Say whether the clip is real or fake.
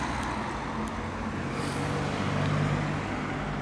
real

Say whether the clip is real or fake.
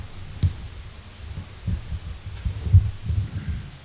real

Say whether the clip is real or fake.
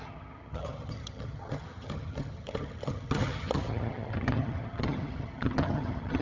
fake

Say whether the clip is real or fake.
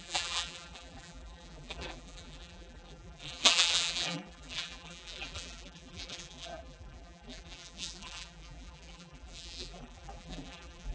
fake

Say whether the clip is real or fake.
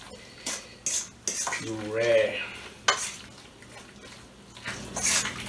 real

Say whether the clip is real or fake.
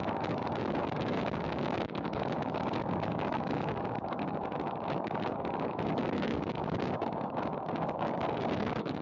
fake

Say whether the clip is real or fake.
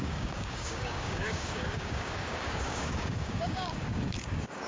fake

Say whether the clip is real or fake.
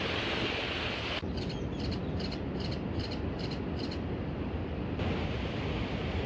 real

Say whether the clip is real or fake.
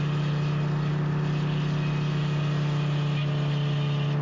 real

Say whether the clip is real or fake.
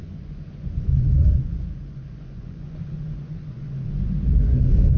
fake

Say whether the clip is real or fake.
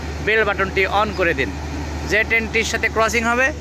real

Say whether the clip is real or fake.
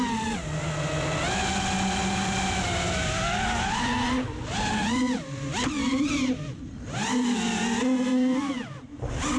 real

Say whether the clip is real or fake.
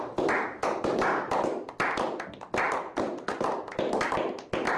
real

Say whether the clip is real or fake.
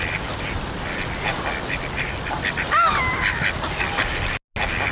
real